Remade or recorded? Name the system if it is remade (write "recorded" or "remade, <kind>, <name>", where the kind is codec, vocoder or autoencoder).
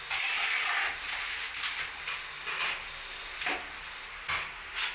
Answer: recorded